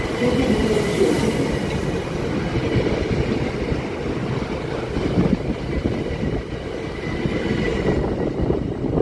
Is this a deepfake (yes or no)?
no